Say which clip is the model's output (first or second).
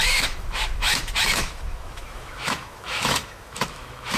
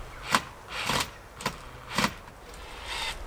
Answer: first